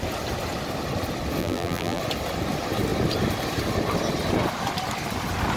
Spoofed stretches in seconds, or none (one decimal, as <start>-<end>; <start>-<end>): 1.4-2.0